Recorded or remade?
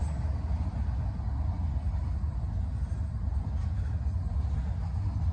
recorded